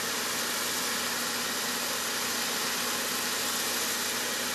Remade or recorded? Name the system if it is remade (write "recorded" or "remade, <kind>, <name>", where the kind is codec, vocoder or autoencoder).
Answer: recorded